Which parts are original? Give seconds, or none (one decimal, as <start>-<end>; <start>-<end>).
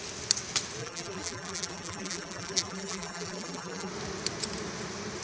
0.0-0.8; 3.9-5.2